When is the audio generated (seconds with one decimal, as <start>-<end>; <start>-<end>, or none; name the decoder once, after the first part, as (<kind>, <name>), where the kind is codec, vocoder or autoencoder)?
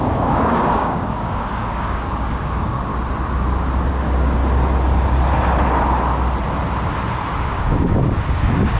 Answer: 0.0-2.9 (codec, DAC); 3.9-4.4; 7.4-8.8